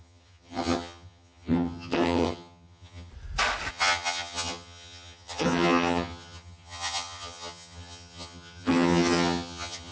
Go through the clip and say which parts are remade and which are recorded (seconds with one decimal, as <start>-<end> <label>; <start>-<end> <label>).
0.0-3.1 remade; 3.1-3.7 recorded; 3.7-9.9 remade